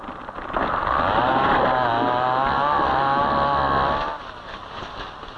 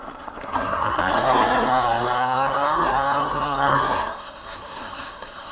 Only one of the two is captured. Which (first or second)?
first